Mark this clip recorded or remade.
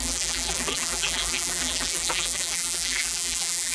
remade